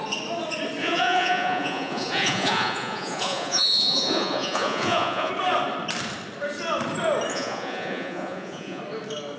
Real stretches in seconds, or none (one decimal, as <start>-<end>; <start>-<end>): 0.0-0.8; 5.3-7.3; 8.8-9.4